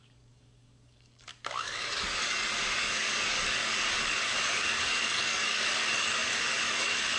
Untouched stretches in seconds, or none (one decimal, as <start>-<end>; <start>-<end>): none